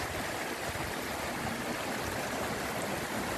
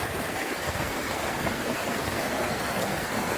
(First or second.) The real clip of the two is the first